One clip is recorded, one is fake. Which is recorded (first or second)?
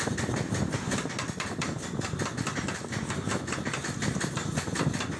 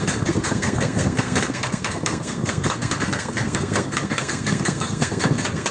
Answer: first